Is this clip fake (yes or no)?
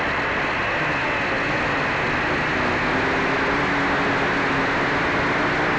no